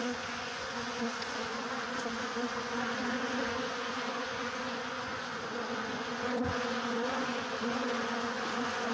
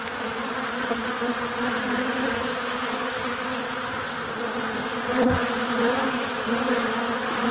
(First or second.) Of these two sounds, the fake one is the first